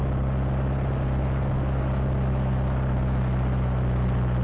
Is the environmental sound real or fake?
real